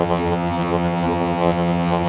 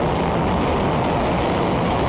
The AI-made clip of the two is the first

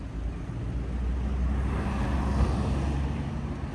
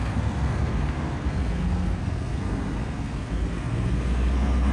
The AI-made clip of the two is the second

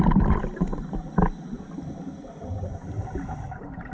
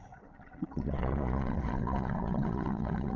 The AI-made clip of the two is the second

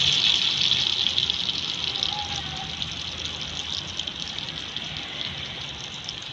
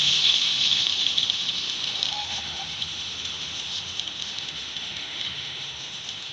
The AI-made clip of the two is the second